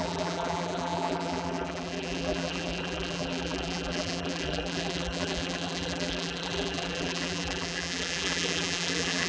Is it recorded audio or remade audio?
remade